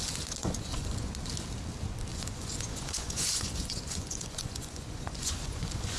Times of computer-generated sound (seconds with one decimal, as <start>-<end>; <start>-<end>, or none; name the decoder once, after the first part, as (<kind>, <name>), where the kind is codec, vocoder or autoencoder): 0.4-1.1 (vocoder, Vocos); 2.1-6.0